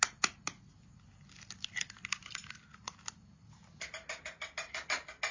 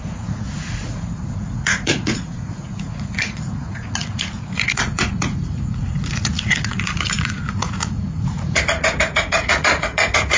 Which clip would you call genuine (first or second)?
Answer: first